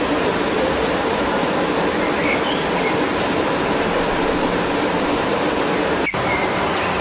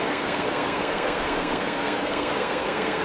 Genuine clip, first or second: first